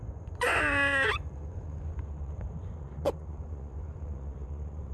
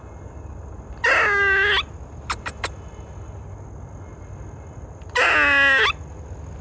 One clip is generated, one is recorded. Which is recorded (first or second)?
second